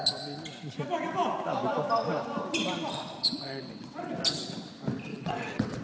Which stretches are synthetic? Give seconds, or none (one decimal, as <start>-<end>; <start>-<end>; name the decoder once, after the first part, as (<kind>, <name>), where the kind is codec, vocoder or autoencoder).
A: 3.2-4.1 (vocoder, WaveNeXt); 5.1-5.8